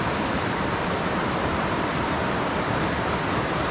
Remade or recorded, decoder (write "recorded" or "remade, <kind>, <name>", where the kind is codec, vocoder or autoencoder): remade, vocoder, BigVGAN v2